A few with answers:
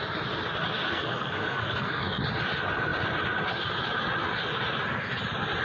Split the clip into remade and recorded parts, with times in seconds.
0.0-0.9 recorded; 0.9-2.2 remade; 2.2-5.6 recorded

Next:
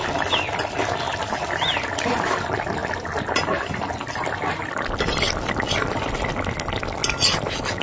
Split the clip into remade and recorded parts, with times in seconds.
0.0-7.8 recorded

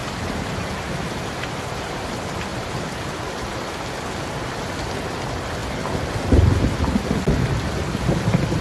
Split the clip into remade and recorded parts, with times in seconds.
0.0-2.1 remade; 2.1-2.5 recorded; 2.5-3.4 remade; 3.4-8.6 recorded